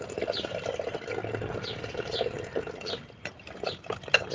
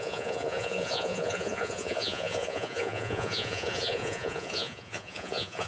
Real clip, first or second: first